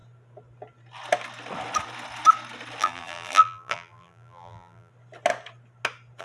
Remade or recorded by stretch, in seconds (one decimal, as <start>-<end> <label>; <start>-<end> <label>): 0.0-2.8 recorded; 2.8-4.9 remade; 4.9-6.2 recorded